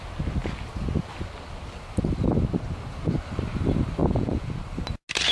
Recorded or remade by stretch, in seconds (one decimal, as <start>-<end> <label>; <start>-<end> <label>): 0.0-4.0 recorded; 4.0-4.5 remade; 4.5-5.3 recorded